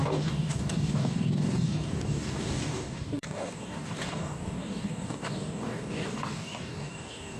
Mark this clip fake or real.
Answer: fake